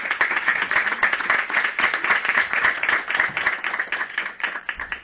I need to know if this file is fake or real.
fake